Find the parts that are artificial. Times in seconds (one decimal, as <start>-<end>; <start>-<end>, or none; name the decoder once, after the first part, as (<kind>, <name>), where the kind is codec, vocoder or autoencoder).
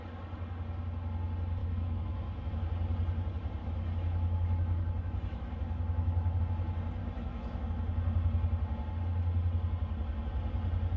1.6-2.5 (autoencoder, DAC-VAE); 3.6-6.4; 7.0-7.7